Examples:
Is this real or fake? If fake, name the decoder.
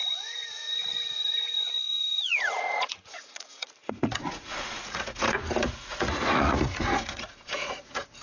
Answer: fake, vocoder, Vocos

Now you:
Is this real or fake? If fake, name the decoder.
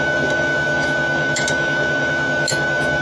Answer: fake, autoencoder, DAC-VAE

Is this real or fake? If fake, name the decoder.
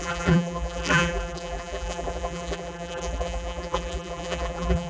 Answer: fake, vocoder, BigVGAN v2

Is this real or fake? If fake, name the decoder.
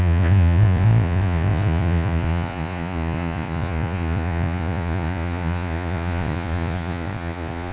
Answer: fake, vocoder, Vocos